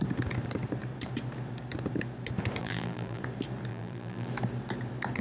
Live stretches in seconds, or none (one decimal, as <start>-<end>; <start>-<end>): 0.0-2.6; 3.2-3.7; 4.3-5.2